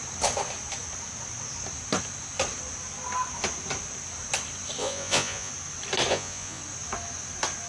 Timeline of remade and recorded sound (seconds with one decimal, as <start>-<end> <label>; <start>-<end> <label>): 0.0-4.8 recorded; 4.8-5.5 remade; 5.5-6.1 recorded; 6.1-6.6 remade; 6.6-7.7 recorded